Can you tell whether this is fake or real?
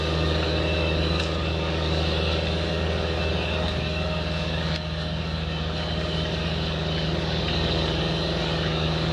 fake